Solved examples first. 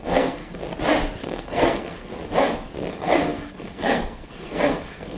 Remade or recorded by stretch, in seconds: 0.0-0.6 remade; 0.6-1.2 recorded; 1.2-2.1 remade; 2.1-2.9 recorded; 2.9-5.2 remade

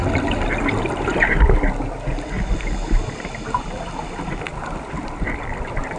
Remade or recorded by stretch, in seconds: 0.0-6.0 recorded

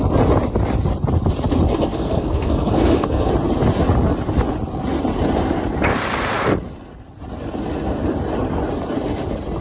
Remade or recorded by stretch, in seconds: 0.0-1.7 recorded; 1.7-3.3 remade; 3.3-9.6 recorded

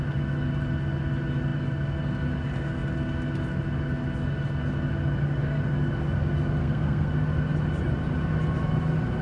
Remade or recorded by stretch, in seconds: 0.0-6.6 recorded; 6.6-7.1 remade; 7.1-9.2 recorded

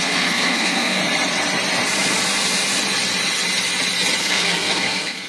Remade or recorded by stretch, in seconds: 0.0-1.0 remade; 1.0-4.2 recorded; 4.2-5.3 remade

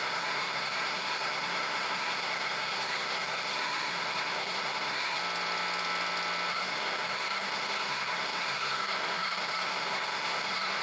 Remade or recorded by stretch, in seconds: 0.0-5.2 remade; 5.2-6.5 recorded; 6.5-10.8 remade